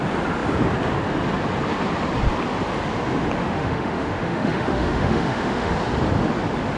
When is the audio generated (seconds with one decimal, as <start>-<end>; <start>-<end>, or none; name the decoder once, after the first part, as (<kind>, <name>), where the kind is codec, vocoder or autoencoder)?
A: 3.4-5.7 (autoencoder, DAC-VAE)